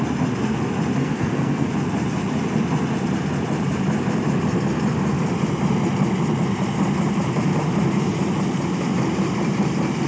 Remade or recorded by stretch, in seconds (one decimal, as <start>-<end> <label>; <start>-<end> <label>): 0.0-1.0 recorded; 1.0-1.7 remade; 1.7-10.1 recorded